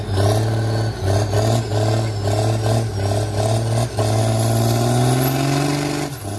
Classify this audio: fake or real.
real